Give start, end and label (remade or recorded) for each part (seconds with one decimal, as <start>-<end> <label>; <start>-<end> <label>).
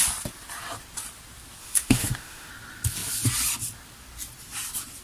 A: 0.0-1.6 recorded; 1.6-2.5 remade; 2.5-5.0 recorded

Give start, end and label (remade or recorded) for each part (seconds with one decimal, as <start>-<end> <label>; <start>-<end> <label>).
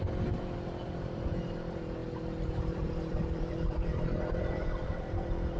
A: 0.0-2.0 recorded; 2.0-5.6 remade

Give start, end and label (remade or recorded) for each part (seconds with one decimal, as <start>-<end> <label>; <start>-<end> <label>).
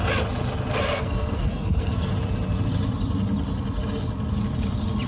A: 0.0-0.9 recorded; 0.9-2.1 remade; 2.1-5.1 recorded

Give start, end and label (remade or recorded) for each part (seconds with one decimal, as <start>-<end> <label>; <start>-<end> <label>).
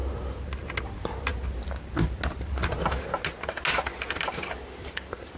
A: 0.0-5.4 recorded